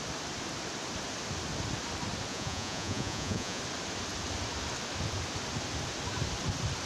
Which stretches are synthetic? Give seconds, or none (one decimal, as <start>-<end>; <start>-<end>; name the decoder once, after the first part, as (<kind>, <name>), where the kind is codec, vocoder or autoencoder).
2.3-3.6 (vocoder, Vocos)